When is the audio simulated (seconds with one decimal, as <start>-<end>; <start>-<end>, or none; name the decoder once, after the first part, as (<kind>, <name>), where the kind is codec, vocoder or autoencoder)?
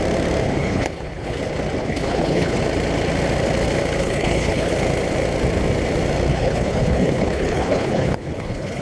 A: 0.6-1.4 (codec, HILCodec); 1.8-2.6; 4.0-4.7; 6.3-8.8